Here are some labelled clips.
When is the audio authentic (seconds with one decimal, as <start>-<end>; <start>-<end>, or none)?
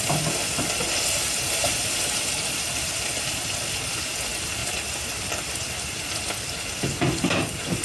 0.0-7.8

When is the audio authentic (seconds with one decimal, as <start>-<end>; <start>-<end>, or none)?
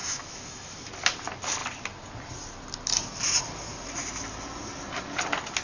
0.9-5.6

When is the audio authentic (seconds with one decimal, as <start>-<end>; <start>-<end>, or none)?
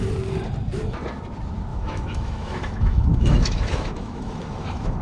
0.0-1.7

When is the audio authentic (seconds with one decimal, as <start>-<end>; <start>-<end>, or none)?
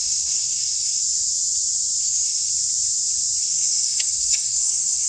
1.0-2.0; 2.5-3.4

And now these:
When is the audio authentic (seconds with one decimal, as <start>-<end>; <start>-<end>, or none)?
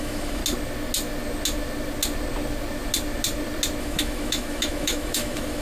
0.4-3.8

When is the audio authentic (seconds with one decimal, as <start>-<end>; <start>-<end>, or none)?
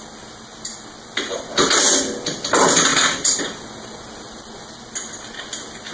0.0-2.9; 3.4-5.9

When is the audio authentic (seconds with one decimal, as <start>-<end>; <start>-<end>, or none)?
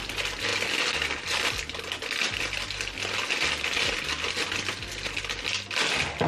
0.0-6.3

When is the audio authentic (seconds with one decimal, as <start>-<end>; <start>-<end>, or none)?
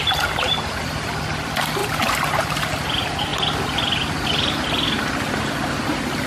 0.0-6.3